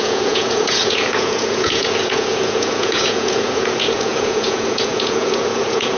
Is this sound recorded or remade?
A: remade